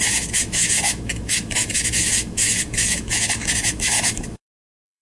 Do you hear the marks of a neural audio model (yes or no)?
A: yes